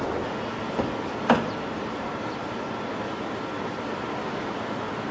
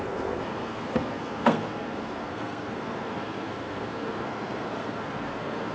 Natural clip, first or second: first